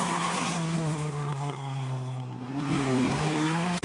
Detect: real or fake fake